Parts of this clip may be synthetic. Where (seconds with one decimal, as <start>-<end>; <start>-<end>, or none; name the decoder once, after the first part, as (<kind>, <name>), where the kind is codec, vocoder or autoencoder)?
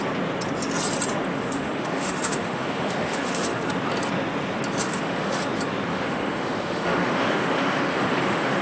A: 1.3-3.7 (autoencoder, DAC-VAE); 4.8-5.4; 5.9-8.6